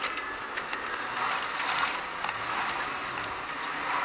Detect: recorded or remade recorded